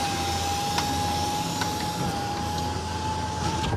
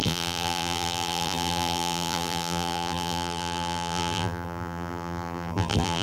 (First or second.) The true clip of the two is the first